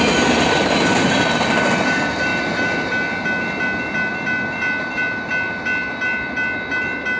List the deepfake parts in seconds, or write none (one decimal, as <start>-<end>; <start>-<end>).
none